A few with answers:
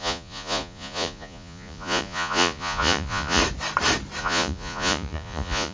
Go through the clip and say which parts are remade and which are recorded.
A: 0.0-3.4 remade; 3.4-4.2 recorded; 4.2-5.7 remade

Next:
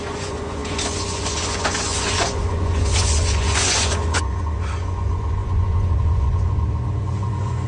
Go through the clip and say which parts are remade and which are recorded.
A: 0.0-7.7 remade

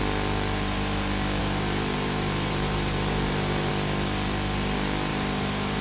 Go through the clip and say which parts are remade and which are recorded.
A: 0.0-1.4 recorded; 1.4-3.7 remade; 3.7-5.1 recorded; 5.1-5.8 remade

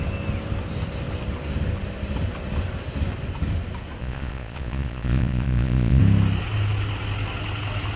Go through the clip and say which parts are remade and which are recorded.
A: 0.0-4.0 recorded; 4.0-6.0 remade; 6.0-8.0 recorded

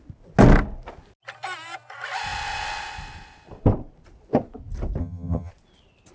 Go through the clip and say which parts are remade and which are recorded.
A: 0.0-5.0 recorded; 5.0-5.5 remade; 5.5-6.1 recorded

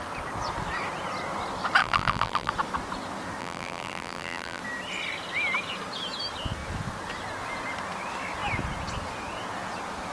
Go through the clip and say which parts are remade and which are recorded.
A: 0.0-1.8 recorded; 1.8-2.5 remade; 2.5-3.4 recorded; 3.4-4.6 remade; 4.6-10.1 recorded

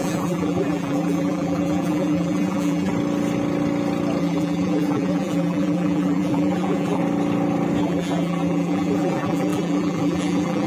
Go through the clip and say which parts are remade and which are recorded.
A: 0.0-2.9 remade; 2.9-4.2 recorded; 4.2-7.0 remade; 7.0-7.8 recorded; 7.8-10.7 remade

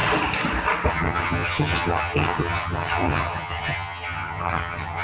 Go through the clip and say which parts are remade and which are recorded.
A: 0.0-0.9 recorded; 0.9-5.0 remade